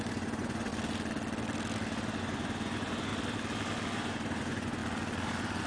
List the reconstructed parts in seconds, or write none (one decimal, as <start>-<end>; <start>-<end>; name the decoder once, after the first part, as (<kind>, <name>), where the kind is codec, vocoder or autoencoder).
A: 0.0-0.7 (vocoder, Vocos); 2.2-3.1; 4.0-4.8